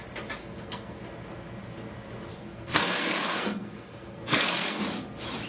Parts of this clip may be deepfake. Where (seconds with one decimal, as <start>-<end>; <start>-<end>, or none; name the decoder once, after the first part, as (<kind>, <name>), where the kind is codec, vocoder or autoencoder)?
0.4-1.0 (codec, SNAC); 2.3-4.8